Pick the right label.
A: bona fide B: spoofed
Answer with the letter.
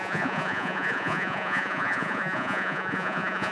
B